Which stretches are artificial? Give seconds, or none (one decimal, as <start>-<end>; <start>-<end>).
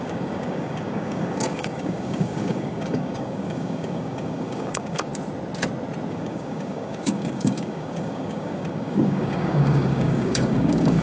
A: 0.0-5.1; 6.1-11.0